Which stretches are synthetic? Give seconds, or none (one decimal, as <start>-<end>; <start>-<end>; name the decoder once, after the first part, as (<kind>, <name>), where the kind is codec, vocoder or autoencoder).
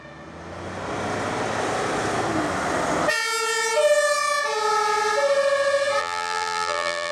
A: 6.0-7.1 (vocoder, BigVGAN v2)